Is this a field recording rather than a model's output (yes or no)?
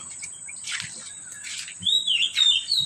yes